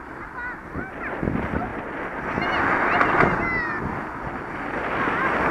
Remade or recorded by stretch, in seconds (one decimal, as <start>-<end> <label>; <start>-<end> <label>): 0.0-5.5 recorded